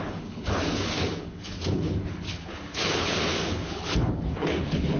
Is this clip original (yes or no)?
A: no